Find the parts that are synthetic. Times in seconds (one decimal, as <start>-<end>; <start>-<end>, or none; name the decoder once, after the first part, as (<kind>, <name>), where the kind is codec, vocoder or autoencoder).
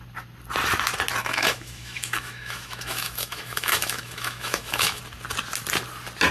1.2-5.0 (autoencoder, DAC-VAE)